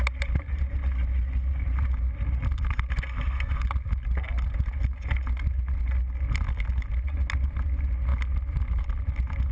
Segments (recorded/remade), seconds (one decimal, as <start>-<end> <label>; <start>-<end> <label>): 0.0-9.5 recorded